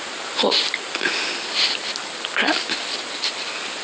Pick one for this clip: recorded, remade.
recorded